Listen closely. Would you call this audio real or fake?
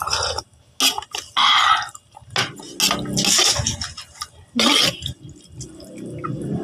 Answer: real